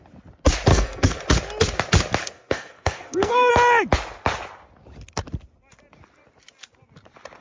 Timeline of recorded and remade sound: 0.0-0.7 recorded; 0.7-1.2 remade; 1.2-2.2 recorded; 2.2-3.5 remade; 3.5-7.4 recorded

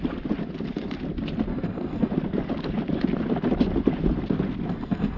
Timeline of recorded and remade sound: 0.0-1.5 recorded; 1.5-2.1 remade; 2.1-4.7 recorded; 4.7-5.2 remade

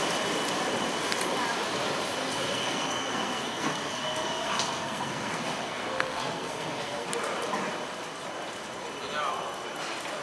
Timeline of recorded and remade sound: 0.0-2.2 recorded; 2.2-7.1 remade; 7.1-10.2 recorded

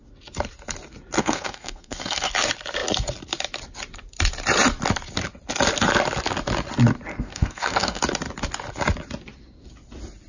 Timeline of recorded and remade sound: 0.0-1.2 recorded; 1.2-2.3 remade; 2.3-7.1 recorded; 7.1-8.0 remade; 8.0-10.3 recorded

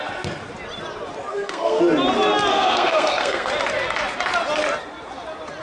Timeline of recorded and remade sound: 0.0-1.3 recorded; 1.3-1.8 remade; 1.8-2.5 recorded; 2.5-3.5 remade; 3.5-5.6 recorded